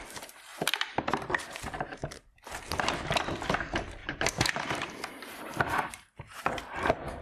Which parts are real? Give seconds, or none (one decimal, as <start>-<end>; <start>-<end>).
0.0-0.5; 2.8-4.0; 6.4-7.2